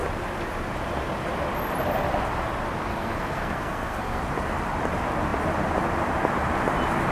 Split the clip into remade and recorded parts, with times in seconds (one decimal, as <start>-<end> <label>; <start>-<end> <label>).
0.0-2.9 recorded; 2.9-4.2 remade; 4.2-7.1 recorded